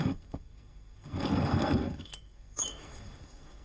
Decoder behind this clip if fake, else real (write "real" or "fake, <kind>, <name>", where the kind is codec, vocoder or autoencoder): fake, codec, SNAC